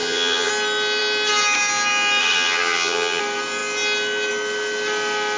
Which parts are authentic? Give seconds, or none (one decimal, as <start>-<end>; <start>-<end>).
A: 0.5-2.2; 3.2-5.4

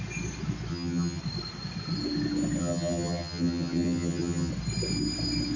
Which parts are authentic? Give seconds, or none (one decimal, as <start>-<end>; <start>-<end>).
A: 0.0-0.7; 1.2-2.6; 4.5-5.6

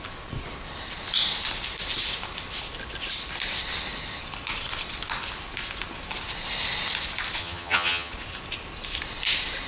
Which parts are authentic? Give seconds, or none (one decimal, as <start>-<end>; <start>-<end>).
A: 0.0-7.4; 8.1-9.7

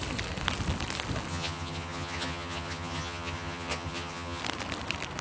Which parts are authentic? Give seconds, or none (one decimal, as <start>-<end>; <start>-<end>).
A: 0.0-1.3; 4.4-5.2

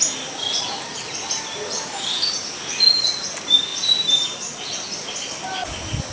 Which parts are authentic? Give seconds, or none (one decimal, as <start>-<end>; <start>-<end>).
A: 0.0-6.1

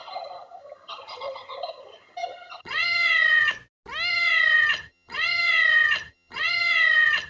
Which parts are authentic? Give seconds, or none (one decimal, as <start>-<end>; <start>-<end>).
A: 3.5-4.1

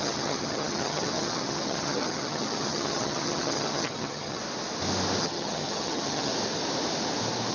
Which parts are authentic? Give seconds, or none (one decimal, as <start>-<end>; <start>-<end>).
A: 4.4-5.2; 6.3-7.5

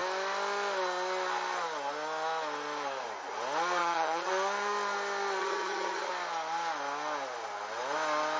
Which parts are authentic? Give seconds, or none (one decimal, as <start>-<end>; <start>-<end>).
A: 0.0-3.8; 4.3-5.4; 6.1-8.4